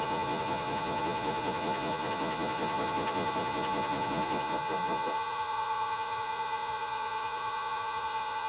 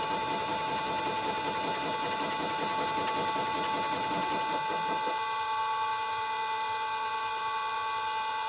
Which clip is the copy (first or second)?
first